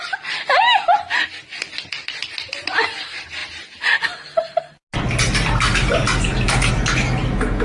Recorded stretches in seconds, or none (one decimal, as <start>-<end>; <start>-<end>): 0.0-7.6